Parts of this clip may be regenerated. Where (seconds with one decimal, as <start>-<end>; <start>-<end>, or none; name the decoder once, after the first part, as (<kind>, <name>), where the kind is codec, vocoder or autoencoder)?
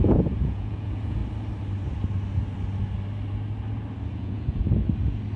0.0-1.2 (vocoder, Vocos); 4.1-4.6